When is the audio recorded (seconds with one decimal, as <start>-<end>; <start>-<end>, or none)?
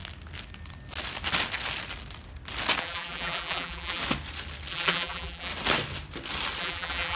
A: 0.0-2.8; 4.0-4.7; 5.5-6.6